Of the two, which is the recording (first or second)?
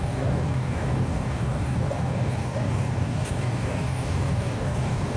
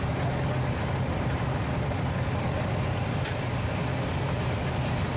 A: second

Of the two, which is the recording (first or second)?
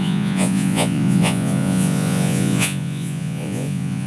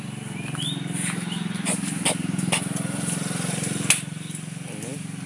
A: second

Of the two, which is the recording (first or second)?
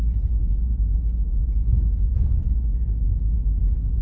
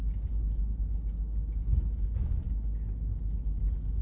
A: second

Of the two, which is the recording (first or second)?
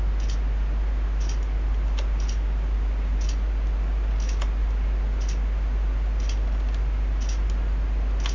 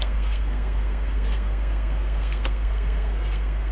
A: first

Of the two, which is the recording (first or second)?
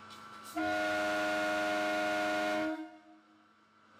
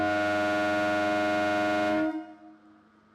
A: second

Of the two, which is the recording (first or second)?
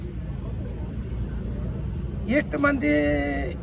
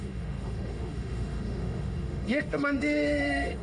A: first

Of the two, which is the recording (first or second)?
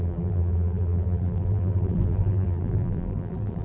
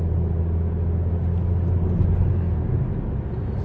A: second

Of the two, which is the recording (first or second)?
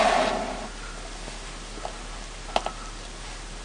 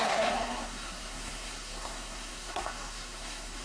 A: first